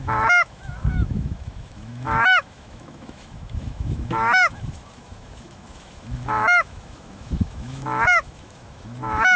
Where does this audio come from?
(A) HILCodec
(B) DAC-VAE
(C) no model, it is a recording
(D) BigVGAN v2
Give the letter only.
B